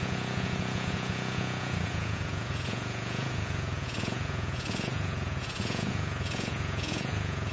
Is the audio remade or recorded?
remade